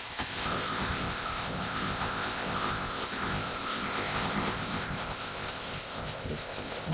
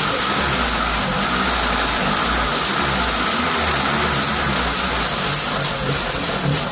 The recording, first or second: second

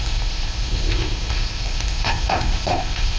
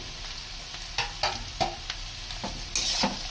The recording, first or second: second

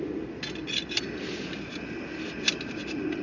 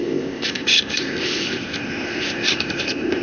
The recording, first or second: first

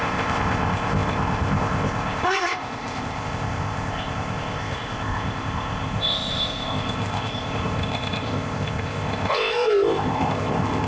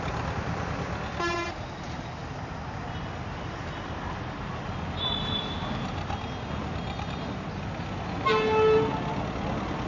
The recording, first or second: second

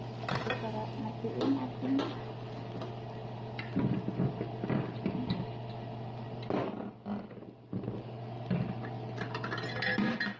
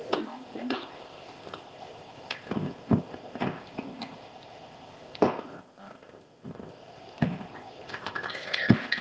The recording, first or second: first